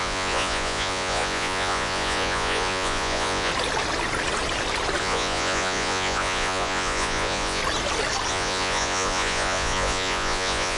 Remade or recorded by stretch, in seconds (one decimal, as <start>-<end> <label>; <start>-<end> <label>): 0.0-3.5 remade; 3.5-5.0 recorded; 5.0-7.6 remade; 7.6-8.3 recorded; 8.3-10.8 remade